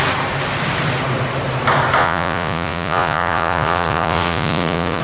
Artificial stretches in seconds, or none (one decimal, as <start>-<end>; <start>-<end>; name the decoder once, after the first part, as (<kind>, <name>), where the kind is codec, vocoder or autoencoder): 2.0-5.0 (vocoder, Vocos)